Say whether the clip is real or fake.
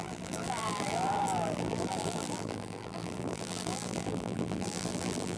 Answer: fake